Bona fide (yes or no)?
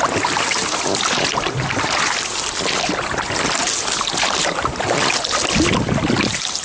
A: yes